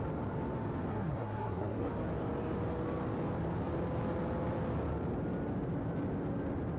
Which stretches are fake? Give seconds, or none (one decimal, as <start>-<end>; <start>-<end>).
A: 0.9-1.9